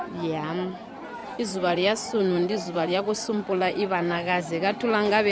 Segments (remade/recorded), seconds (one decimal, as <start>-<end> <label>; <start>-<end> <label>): 0.0-1.2 recorded; 1.2-4.4 remade; 4.4-5.3 recorded